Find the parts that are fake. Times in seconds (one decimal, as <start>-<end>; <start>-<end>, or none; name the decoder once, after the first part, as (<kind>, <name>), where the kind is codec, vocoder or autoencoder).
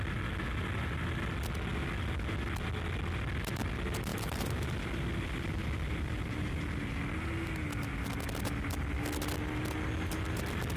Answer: 4.1-6.6 (vocoder, BigVGAN v2)